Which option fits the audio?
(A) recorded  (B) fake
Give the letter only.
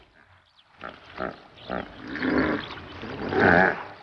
A